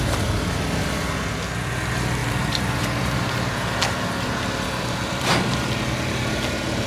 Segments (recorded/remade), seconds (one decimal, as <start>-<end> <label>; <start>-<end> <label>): 0.0-2.2 recorded; 2.2-3.5 remade; 3.5-6.9 recorded